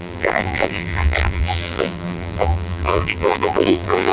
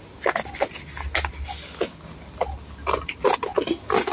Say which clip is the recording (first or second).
second